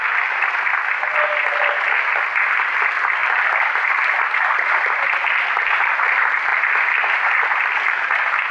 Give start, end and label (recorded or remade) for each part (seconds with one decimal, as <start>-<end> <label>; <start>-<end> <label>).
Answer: 0.0-3.2 recorded; 3.2-5.4 remade; 5.4-8.5 recorded